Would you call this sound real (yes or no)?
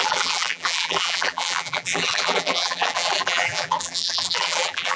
no